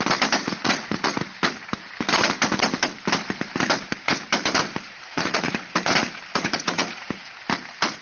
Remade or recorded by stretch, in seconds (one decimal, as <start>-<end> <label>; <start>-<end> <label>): 0.0-0.4 recorded; 0.4-1.3 remade; 1.3-5.0 recorded; 5.0-5.8 remade; 5.8-6.3 recorded; 6.3-7.1 remade; 7.1-8.0 recorded